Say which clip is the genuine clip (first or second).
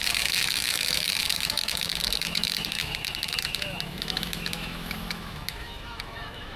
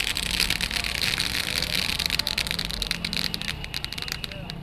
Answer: second